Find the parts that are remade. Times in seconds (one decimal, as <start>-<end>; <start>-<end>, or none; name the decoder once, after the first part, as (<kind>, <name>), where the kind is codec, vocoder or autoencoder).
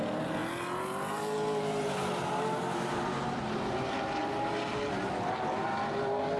none